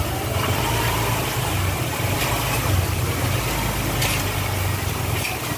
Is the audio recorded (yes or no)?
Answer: yes